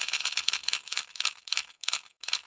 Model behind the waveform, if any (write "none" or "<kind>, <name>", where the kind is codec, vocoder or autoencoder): codec, SNAC